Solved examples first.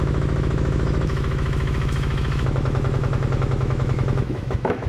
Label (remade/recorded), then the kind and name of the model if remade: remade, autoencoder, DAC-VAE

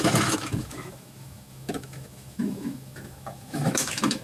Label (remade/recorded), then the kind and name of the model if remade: remade, autoencoder, DAC-VAE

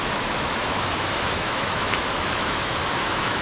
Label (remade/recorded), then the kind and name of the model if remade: remade, autoencoder, DAC-VAE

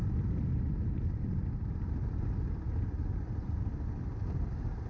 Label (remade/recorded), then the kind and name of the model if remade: recorded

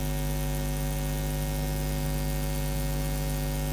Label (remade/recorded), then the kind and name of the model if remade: recorded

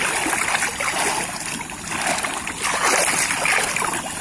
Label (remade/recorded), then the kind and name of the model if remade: recorded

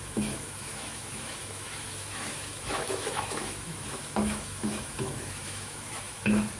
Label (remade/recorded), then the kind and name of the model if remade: remade, autoencoder, DAC-VAE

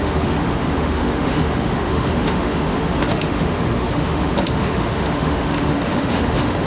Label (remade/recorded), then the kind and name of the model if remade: remade, autoencoder, DAC-VAE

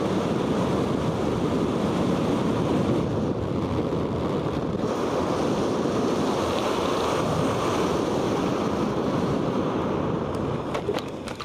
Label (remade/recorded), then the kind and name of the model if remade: recorded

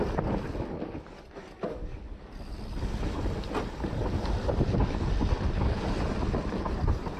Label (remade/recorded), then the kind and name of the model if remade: recorded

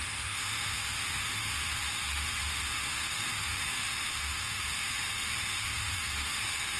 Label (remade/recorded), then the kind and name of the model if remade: remade, autoencoder, DAC-VAE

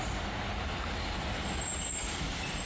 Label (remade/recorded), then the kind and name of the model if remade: recorded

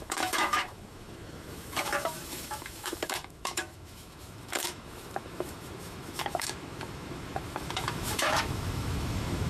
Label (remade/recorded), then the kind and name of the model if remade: remade, autoencoder, DAC-VAE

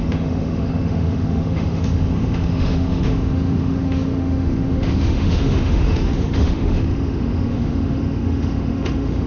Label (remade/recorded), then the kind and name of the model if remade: remade, autoencoder, DAC-VAE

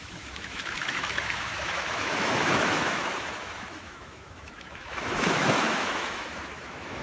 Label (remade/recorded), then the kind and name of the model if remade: remade, autoencoder, DAC-VAE